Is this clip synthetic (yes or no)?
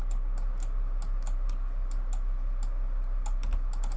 no